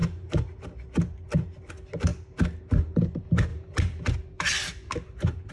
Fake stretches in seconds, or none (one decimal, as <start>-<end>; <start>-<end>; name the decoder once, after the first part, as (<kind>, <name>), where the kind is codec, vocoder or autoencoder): 3.5-5.5 (vocoder, BigVGAN v2)